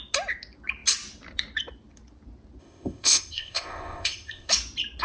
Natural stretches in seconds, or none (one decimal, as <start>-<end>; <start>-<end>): 0.0-2.6; 4.5-5.0